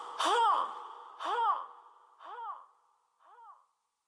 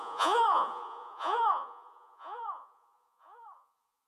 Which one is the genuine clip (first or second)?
first